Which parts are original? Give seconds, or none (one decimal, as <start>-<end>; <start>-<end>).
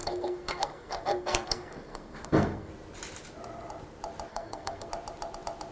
2.7-4.3; 4.9-5.7